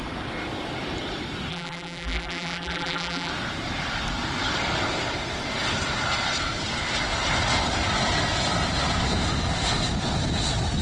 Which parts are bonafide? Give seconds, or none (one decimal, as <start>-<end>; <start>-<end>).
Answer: 0.0-1.5; 3.3-10.8